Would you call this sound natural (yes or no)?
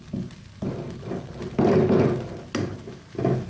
yes